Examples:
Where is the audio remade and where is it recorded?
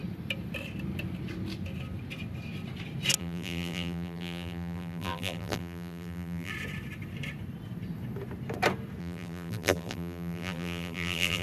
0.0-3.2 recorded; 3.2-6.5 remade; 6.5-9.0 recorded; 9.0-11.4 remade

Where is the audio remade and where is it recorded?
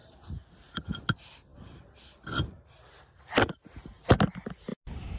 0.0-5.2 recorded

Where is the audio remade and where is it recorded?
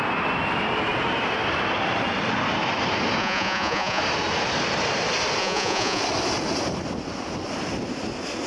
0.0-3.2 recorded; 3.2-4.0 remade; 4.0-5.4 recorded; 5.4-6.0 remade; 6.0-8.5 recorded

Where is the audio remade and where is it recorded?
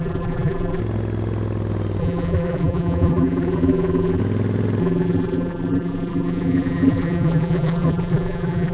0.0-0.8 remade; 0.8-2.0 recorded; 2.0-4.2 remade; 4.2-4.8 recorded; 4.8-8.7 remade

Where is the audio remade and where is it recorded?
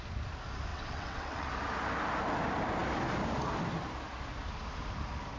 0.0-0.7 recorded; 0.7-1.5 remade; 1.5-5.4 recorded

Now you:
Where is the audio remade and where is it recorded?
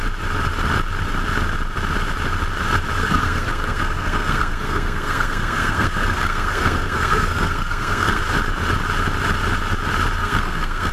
0.0-3.0 recorded; 3.0-8.2 remade; 8.2-10.2 recorded; 10.2-10.9 remade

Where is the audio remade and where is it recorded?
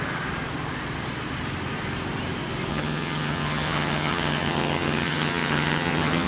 0.0-2.7 recorded; 2.7-6.3 remade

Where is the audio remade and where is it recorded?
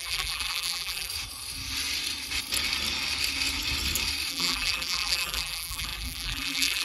0.0-1.1 remade; 1.1-4.3 recorded; 4.3-6.8 remade